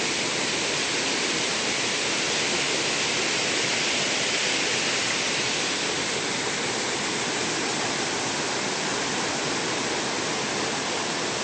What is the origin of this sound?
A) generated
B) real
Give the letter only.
B